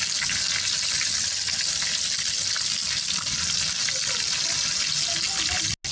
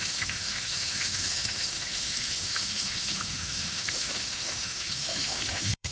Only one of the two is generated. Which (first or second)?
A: second